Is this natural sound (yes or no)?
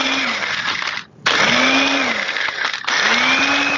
yes